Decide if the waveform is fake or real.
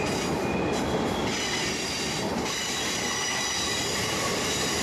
real